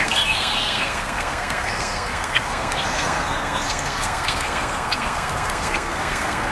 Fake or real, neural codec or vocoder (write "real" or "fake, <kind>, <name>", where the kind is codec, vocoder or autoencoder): fake, codec, SNAC